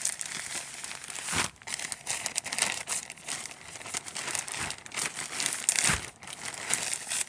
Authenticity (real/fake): real